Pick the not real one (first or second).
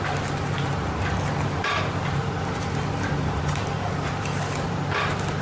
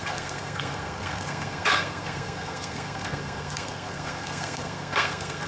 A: second